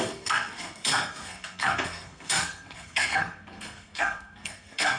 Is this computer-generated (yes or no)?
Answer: yes